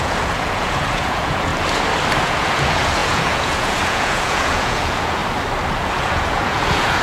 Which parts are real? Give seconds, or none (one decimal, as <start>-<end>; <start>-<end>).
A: 1.5-2.2; 5.2-5.9